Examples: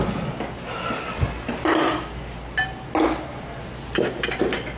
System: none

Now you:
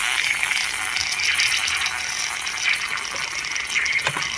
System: none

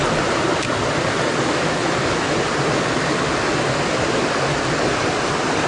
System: none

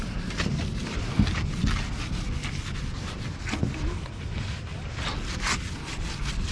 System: none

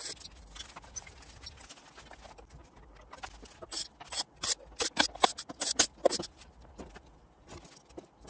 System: none